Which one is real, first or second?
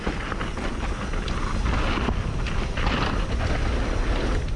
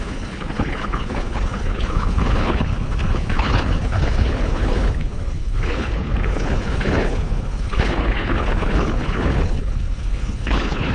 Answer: first